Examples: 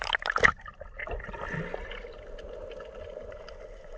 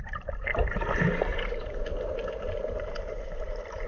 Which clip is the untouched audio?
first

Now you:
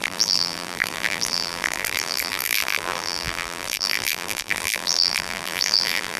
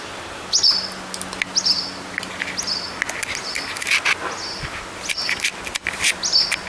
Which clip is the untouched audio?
second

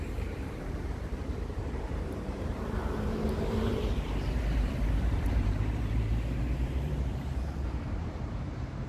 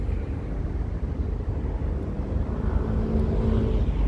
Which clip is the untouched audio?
second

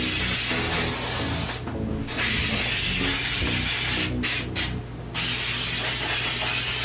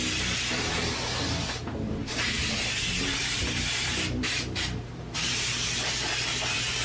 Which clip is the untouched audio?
first